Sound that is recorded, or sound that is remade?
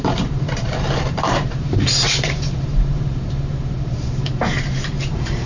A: remade